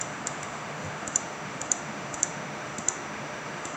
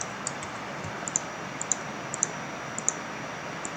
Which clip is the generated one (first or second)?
first